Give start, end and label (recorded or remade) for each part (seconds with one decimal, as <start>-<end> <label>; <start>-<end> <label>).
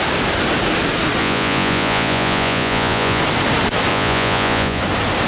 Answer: 0.0-1.2 recorded; 1.2-3.2 remade; 3.2-3.9 recorded; 3.9-4.8 remade; 4.8-5.3 recorded